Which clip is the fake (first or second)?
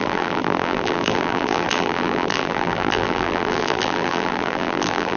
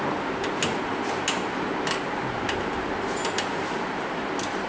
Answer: first